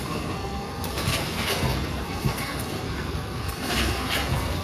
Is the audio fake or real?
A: fake